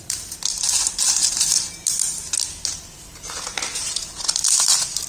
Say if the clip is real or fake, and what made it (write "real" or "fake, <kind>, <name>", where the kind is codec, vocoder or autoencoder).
real